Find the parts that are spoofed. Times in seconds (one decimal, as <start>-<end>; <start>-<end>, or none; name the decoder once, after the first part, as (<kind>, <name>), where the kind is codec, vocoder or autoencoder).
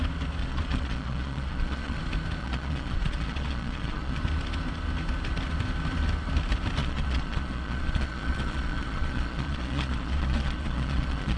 0.4-2.0 (vocoder, Vocos); 2.4-4.2; 6.8-11.4